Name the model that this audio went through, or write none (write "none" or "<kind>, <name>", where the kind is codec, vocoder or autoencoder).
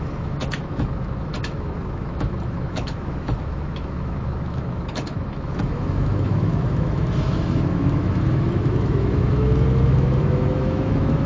autoencoder, DAC-VAE